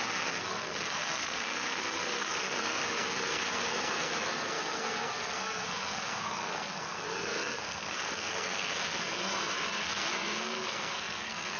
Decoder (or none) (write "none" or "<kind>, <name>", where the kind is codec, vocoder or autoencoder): codec, SNAC